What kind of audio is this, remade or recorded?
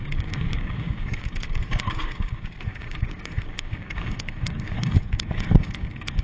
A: remade